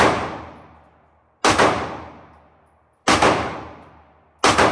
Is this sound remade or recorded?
recorded